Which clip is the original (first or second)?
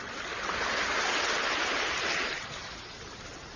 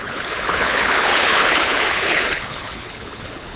first